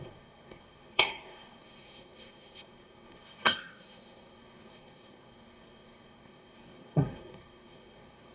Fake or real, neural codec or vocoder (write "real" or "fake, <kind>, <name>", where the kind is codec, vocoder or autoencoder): fake, codec, SNAC